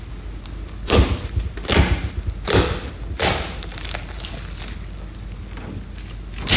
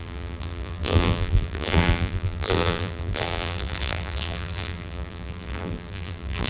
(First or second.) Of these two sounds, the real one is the first